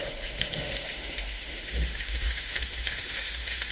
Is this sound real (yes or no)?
no